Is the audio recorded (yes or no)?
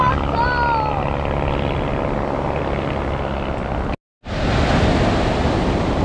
yes